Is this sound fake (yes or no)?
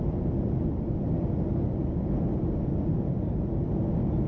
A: no